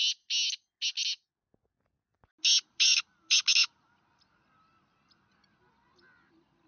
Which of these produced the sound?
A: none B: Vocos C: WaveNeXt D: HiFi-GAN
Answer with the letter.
A